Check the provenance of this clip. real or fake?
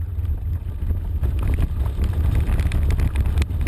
real